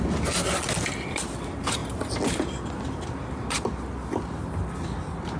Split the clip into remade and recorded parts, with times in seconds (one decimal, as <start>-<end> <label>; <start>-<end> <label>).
0.0-5.4 recorded